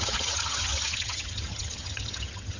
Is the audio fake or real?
fake